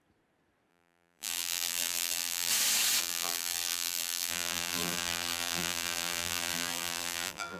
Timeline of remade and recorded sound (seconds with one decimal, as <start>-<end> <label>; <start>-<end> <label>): 0.0-0.7 recorded; 0.7-2.5 remade; 2.5-3.0 recorded; 3.0-7.6 remade